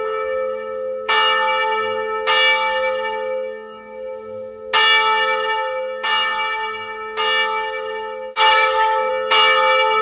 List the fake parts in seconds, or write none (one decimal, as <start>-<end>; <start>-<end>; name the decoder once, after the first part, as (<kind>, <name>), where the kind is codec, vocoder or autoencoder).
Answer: 8.5-9.1 (codec, SNAC)

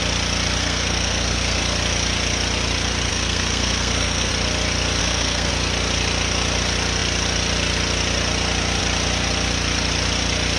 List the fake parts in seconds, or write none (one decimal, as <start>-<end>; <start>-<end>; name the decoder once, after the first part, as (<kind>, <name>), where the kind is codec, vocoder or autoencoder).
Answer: 0.6-1.6 (codec, SNAC); 3.1-4.3; 5.0-5.5

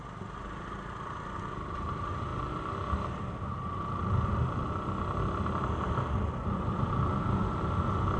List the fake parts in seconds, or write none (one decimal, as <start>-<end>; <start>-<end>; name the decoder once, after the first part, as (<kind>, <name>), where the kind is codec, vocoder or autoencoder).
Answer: none

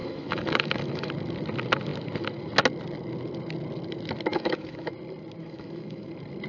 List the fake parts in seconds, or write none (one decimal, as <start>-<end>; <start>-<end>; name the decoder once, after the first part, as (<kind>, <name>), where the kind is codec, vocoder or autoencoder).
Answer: 0.0-1.1 (autoencoder, DAC-VAE); 4.3-4.9; 5.4-6.1

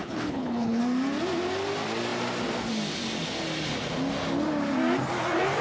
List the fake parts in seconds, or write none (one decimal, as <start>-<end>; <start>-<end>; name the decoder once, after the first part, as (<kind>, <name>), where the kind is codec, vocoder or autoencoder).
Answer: 0.0-0.8 (codec, HILCodec)

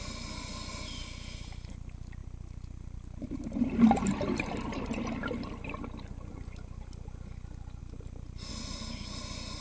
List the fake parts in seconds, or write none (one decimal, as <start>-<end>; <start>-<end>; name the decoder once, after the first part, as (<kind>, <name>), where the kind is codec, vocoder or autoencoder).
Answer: none

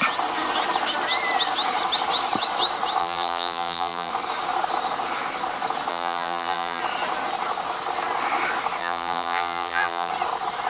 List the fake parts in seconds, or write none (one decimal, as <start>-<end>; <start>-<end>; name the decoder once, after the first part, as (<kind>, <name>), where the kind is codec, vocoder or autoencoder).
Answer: 3.0-4.1 (vocoder, BigVGAN v2); 5.9-6.8; 8.8-10.1